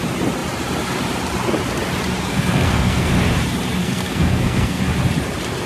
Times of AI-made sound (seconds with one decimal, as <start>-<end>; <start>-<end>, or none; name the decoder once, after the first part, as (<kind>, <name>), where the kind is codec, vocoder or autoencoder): 2.3-3.1 (codec, SNAC); 3.8-4.8